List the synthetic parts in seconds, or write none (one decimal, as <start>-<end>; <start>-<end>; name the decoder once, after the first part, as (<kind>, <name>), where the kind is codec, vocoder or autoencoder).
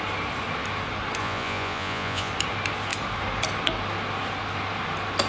1.2-2.3 (vocoder, Vocos)